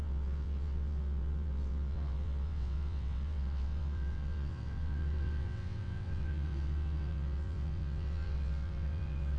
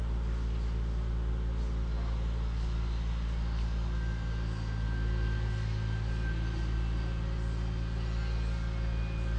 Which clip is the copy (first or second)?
first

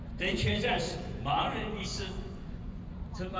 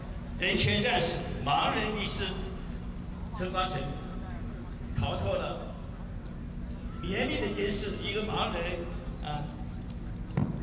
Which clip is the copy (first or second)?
first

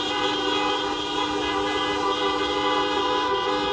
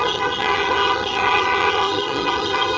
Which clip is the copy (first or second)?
second